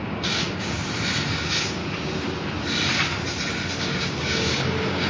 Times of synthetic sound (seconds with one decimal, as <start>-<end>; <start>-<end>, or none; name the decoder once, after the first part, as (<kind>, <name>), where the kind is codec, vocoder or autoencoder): 0.0-0.8 (codec, DAC); 1.3-1.8; 3.8-5.1